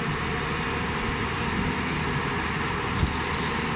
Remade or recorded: recorded